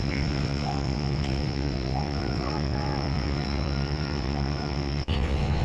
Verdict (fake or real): fake